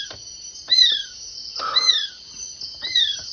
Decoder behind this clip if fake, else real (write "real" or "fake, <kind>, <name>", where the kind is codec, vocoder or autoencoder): real